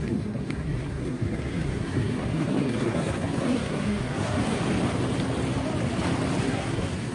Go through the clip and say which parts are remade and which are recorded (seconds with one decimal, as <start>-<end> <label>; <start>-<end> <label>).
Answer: 0.0-4.6 remade; 4.6-6.4 recorded; 6.4-7.1 remade